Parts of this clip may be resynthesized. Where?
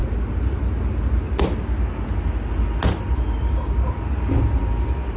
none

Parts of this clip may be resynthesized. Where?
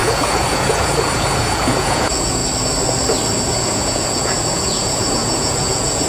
0.0-2.4 (vocoder, Vocos); 3.4-6.1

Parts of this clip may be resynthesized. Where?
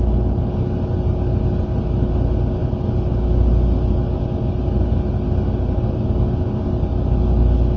none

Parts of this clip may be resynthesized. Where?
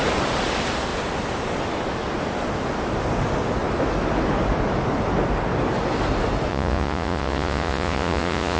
6.5-8.6 (vocoder, Vocos)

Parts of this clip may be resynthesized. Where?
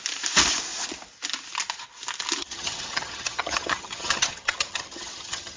2.4-5.6 (vocoder, HiFi-GAN)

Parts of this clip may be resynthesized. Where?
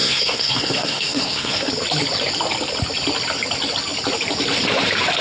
0.0-1.7 (codec, SNAC)